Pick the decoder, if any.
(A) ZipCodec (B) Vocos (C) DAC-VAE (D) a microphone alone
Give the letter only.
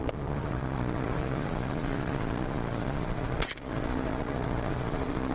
B